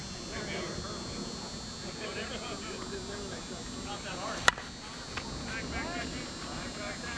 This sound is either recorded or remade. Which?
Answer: recorded